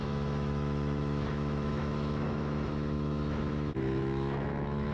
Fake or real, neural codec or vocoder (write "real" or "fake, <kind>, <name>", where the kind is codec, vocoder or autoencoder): fake, autoencoder, DAC-VAE